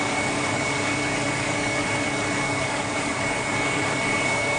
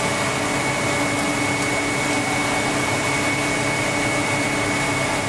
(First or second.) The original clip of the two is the second